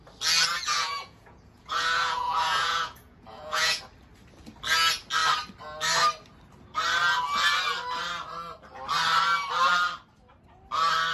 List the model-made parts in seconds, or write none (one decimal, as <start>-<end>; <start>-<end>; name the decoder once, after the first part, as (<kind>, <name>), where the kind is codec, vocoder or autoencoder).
0.5-3.8 (vocoder, Vocos)